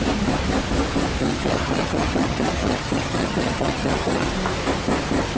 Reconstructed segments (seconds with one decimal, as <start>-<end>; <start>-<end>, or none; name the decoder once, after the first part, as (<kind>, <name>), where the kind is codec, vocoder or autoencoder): 1.2-4.3 (vocoder, HiFi-GAN)